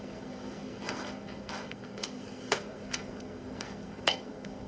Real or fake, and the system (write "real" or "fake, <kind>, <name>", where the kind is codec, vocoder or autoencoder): fake, codec, SNAC